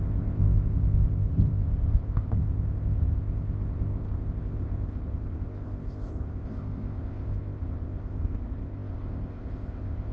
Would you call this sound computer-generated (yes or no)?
yes